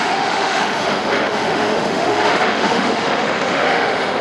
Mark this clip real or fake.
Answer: fake